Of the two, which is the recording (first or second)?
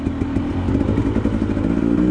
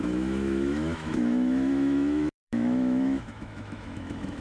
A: first